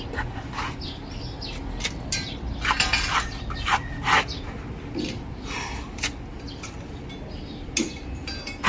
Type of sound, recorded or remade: recorded